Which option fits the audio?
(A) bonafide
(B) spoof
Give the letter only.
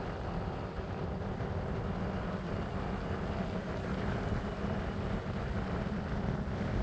A